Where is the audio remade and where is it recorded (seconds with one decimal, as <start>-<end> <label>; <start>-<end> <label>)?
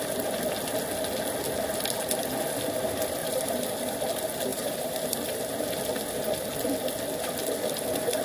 0.0-3.2 recorded; 3.2-3.9 remade; 3.9-4.5 recorded; 4.5-5.4 remade; 5.4-8.2 recorded